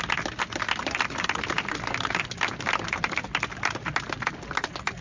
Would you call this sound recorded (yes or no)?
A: yes